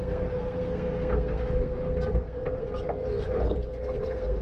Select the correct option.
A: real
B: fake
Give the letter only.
B